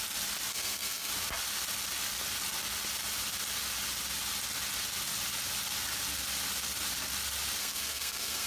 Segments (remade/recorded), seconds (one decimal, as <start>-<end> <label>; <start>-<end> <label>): 0.0-0.5 recorded; 0.5-1.1 remade; 1.1-7.6 recorded; 7.6-8.5 remade

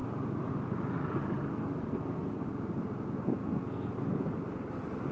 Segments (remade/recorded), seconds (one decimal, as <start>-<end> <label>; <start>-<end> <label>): 0.0-1.5 recorded; 1.5-2.4 remade; 2.4-3.4 recorded; 3.4-3.9 remade; 3.9-5.1 recorded

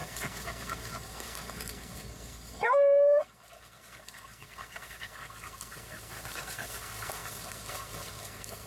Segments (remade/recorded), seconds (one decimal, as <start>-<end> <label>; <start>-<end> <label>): 0.0-8.7 remade

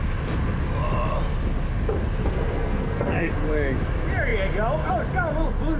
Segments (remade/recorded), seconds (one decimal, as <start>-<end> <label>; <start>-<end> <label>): 0.0-2.2 recorded; 2.2-3.3 remade; 3.3-5.8 recorded

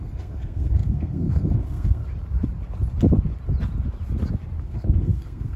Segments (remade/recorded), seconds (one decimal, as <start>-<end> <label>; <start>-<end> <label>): 0.0-2.0 remade; 2.0-4.6 recorded; 4.6-5.6 remade